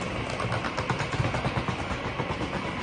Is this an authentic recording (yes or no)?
yes